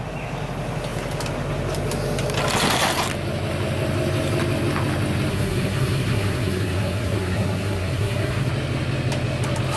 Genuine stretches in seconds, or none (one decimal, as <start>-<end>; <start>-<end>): 0.0-5.3; 8.5-9.8